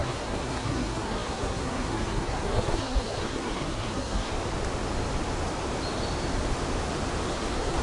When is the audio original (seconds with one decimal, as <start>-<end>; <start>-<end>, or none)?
4.3-7.3